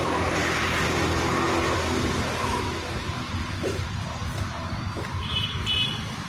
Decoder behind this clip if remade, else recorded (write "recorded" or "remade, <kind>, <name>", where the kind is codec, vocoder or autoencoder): recorded